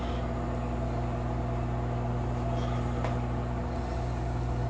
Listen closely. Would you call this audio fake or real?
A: real